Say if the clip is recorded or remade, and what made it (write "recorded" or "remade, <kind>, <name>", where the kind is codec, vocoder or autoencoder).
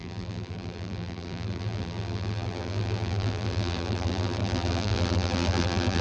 remade, vocoder, BigVGAN v2